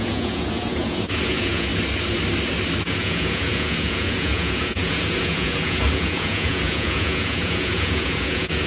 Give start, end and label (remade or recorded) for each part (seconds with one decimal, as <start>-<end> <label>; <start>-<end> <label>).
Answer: 0.0-1.7 remade; 1.7-2.8 recorded; 2.8-8.7 remade